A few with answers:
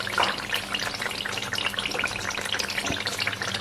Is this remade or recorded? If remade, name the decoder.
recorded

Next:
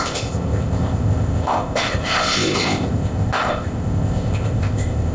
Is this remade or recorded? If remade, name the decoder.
remade, codec, ZipCodec